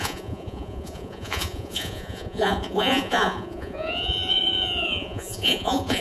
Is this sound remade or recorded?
remade